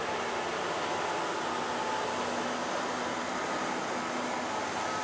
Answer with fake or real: real